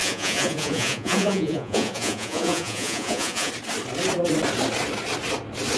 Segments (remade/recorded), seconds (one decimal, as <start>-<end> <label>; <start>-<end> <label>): 0.0-3.5 remade; 3.5-5.8 recorded